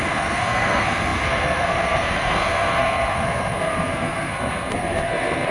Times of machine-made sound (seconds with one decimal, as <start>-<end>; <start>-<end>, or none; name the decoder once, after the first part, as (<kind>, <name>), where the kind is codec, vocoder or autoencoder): 0.0-5.5 (codec, SNAC)